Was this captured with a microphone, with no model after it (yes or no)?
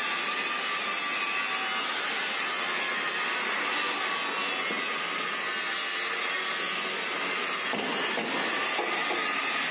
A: yes